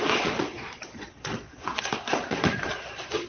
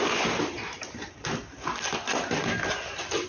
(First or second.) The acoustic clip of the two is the second